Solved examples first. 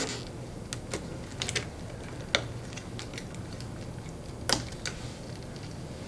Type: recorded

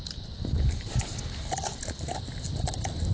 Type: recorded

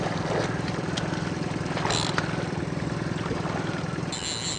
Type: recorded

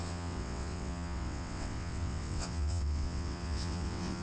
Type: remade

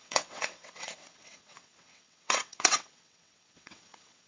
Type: remade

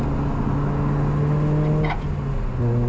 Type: recorded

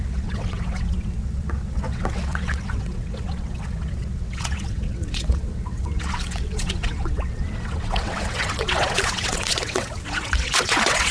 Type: remade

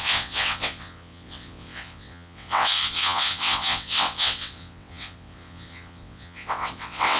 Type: remade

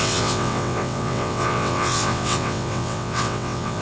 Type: remade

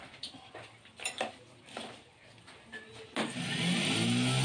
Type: recorded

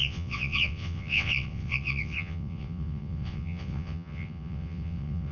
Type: remade